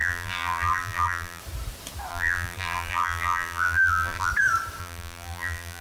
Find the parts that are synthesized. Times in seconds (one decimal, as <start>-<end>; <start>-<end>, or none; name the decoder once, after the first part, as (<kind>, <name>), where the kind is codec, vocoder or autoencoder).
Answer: 0.0-1.4 (vocoder, BigVGAN v2); 2.1-4.3; 4.8-5.8

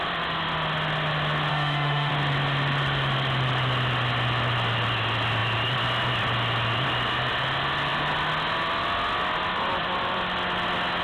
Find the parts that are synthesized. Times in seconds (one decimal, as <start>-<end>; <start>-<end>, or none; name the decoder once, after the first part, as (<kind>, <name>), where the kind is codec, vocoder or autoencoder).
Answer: 1.5-2.1 (autoencoder, DAC-VAE)

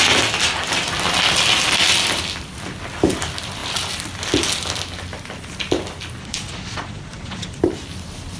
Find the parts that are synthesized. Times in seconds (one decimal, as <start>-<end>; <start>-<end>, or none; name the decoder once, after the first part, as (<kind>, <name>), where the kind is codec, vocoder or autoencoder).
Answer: 6.2-7.6 (vocoder, Vocos)

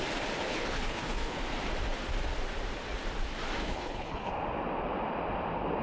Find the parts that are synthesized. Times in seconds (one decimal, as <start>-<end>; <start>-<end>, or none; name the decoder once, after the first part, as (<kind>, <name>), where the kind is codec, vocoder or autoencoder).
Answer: 0.5-1.4 (codec, HILCodec); 3.6-4.3

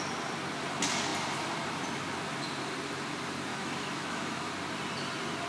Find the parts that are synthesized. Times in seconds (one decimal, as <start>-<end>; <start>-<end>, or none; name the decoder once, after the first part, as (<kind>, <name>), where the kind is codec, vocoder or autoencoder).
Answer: 3.5-4.5 (autoencoder, DAC-VAE)

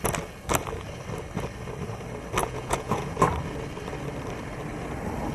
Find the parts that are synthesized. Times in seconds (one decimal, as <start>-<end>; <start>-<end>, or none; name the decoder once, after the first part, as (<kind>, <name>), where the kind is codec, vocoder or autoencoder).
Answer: 2.4-3.2 (vocoder, Vocos)

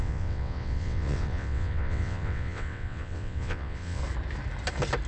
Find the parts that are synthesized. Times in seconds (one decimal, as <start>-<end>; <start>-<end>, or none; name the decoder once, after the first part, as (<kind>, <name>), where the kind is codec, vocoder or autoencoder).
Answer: 0.0-4.0 (vocoder, WaveNeXt)